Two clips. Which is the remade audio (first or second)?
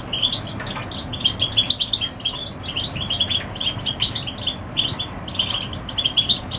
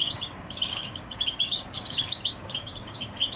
second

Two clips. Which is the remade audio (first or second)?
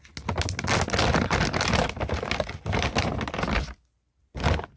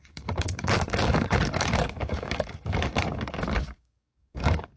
second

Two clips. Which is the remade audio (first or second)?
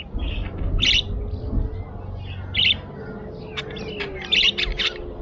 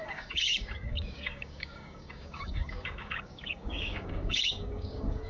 second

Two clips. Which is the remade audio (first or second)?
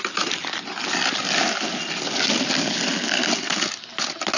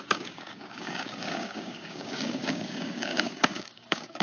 second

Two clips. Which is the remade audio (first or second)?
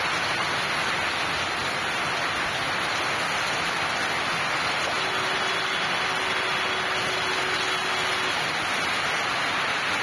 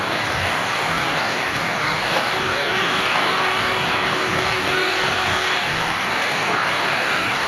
second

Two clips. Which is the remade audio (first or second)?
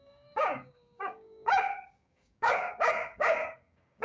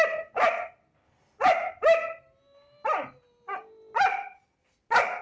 first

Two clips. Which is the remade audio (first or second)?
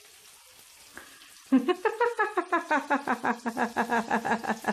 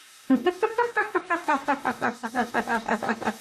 second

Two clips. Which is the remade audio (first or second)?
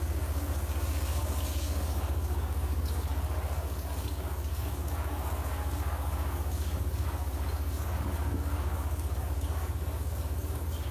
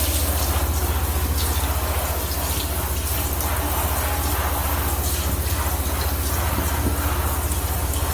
first